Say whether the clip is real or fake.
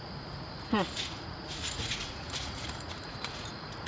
fake